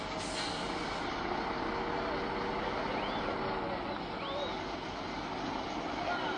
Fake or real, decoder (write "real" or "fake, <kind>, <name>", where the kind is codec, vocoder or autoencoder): real